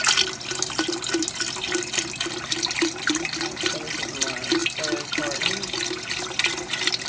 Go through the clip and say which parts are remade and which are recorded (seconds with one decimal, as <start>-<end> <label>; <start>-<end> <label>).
0.0-7.1 recorded